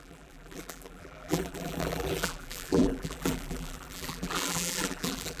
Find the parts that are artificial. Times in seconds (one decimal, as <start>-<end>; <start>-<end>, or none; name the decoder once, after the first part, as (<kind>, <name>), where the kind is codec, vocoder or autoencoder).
0.0-5.4 (vocoder, BigVGAN v2)